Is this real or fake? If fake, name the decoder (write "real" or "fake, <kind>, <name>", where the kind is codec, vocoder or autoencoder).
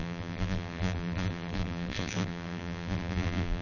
fake, vocoder, BigVGAN v2